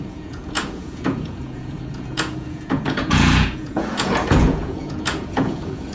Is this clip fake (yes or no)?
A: yes